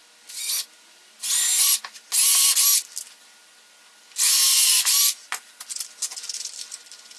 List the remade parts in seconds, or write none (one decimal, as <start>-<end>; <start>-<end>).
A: none